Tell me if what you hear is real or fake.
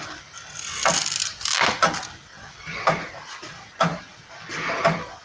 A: real